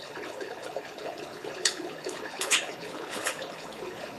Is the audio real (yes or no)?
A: no